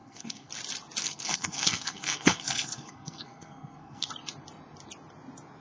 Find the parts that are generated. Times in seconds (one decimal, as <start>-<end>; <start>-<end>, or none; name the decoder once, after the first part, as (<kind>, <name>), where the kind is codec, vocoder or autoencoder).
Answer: 0.0-0.5 (codec, SNAC); 1.0-4.1